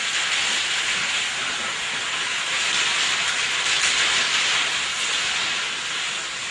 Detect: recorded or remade recorded